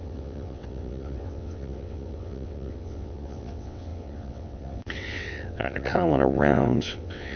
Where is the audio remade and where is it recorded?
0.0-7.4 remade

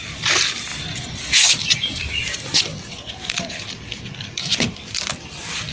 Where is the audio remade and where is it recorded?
0.0-5.7 recorded